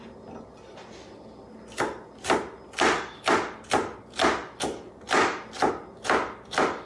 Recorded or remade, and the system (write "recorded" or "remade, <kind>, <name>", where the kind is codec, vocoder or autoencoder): recorded